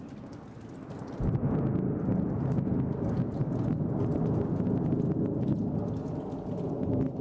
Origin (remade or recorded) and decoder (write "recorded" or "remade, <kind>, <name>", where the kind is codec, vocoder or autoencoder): recorded